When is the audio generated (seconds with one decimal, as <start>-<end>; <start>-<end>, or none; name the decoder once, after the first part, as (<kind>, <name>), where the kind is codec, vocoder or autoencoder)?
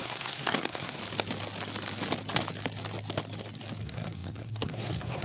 0.0-1.0 (codec, SNAC); 3.8-5.2